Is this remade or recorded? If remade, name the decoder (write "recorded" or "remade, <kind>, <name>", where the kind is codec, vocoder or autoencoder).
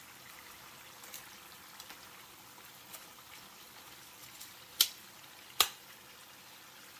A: recorded